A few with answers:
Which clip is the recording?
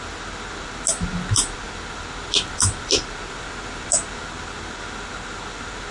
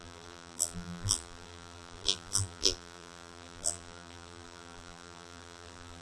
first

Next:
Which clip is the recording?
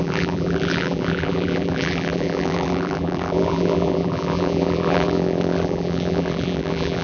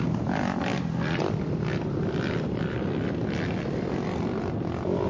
second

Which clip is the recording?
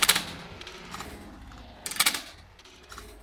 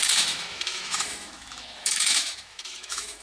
first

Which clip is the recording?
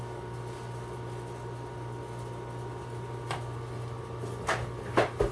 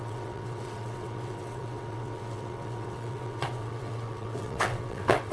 first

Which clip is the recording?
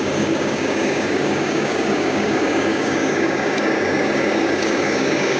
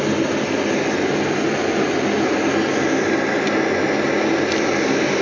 second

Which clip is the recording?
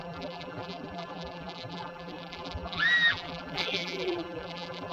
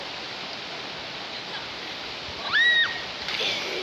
second